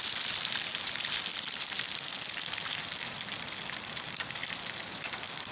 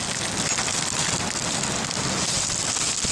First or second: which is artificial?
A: first